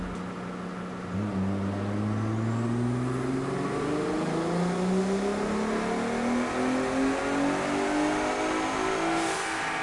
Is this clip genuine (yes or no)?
yes